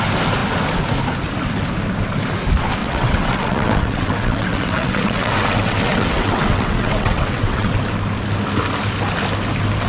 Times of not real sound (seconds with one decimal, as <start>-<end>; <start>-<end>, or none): 2.8-7.7